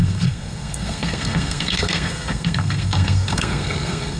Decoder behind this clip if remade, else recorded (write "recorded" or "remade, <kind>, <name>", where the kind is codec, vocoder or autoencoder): remade, codec, SNAC